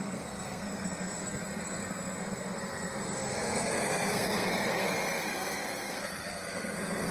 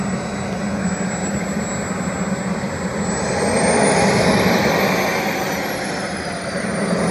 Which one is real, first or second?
second